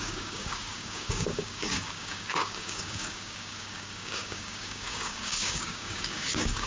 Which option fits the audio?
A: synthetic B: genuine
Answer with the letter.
A